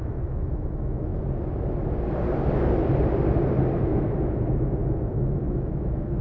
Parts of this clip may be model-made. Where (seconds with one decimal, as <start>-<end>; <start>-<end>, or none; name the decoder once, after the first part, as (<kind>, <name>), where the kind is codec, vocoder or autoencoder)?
0.0-1.1 (autoencoder, DAC-VAE); 3.7-6.2